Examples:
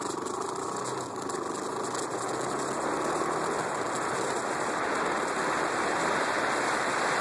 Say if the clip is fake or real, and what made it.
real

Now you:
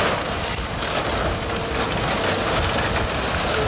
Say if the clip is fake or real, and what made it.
real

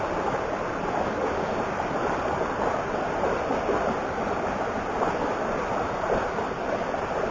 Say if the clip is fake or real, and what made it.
real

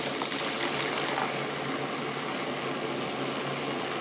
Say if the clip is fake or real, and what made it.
real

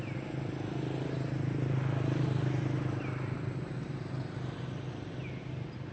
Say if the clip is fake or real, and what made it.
real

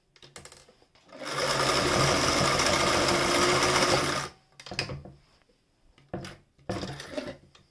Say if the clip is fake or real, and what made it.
real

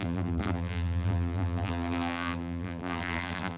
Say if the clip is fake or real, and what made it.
fake, vocoder, BigVGAN v2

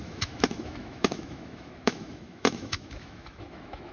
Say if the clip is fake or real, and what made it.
fake, autoencoder, DAC-VAE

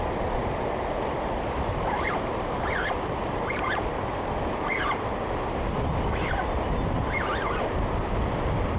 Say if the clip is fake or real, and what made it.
real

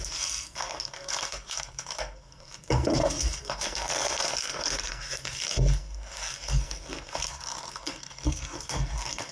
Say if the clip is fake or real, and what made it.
fake, codec, SNAC